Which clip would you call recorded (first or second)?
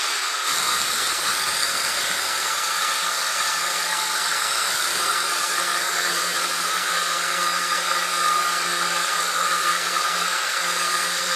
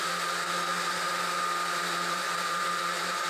second